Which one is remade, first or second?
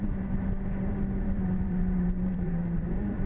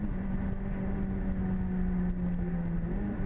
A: first